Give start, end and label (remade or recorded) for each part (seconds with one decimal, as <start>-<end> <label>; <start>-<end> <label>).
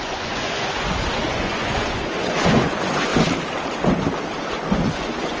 0.0-3.1 remade; 3.1-4.5 recorded; 4.5-5.4 remade